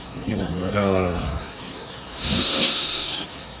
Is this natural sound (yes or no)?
no